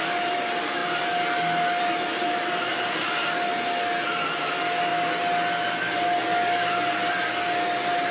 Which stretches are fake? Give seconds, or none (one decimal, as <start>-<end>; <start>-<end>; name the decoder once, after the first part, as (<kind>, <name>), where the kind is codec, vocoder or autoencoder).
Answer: none